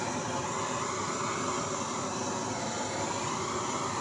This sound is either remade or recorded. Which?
recorded